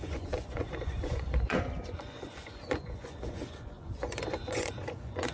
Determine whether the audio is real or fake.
fake